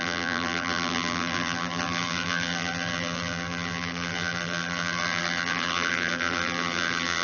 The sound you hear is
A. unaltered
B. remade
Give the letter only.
B